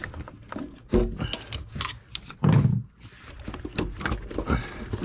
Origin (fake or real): real